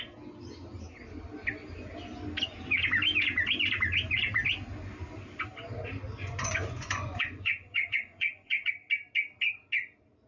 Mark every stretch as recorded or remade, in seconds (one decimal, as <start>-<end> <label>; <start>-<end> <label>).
0.0-6.2 recorded; 6.2-8.7 remade; 8.7-10.3 recorded